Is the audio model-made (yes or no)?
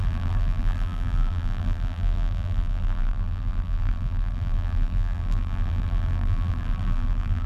yes